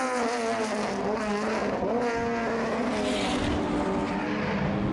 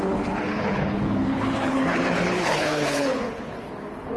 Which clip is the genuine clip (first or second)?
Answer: first